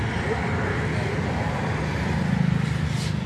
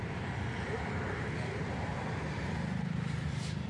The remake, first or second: second